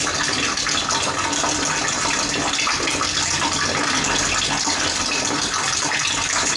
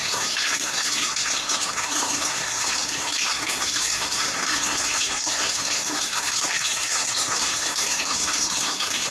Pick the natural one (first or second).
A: first